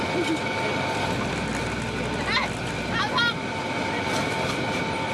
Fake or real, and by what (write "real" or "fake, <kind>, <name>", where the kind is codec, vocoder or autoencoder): real